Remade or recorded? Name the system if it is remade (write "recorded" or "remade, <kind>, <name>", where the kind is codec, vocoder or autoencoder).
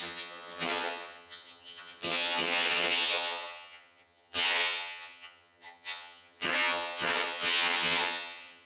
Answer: remade, vocoder, HiFi-GAN